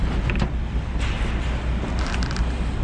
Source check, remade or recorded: recorded